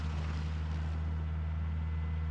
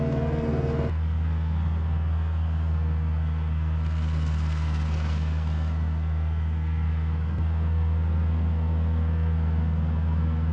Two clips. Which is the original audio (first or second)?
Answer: first